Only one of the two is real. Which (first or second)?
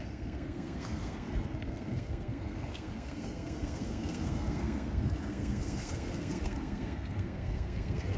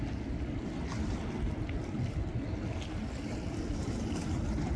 second